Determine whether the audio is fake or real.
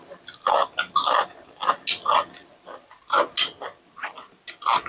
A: real